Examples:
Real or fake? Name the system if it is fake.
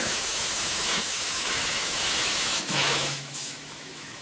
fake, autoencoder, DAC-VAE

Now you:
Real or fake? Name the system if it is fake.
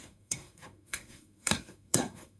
fake, codec, SNAC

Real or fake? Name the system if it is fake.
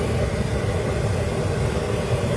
fake, vocoder, BigVGAN v2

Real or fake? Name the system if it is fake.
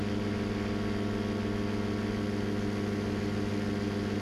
real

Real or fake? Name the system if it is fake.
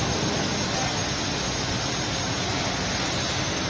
real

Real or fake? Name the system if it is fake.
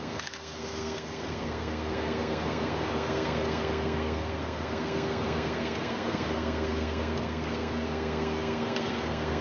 fake, codec, SNAC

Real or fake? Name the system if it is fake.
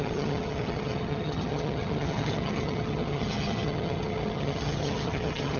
fake, vocoder, HiFi-GAN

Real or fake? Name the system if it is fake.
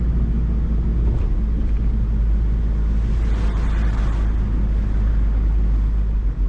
real